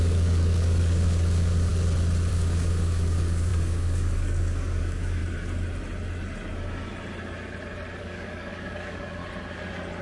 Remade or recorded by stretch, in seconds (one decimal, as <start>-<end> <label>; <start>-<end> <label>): 0.0-1.7 remade; 1.7-2.3 recorded; 2.3-5.2 remade; 5.2-8.0 recorded; 8.0-9.2 remade; 9.2-10.0 recorded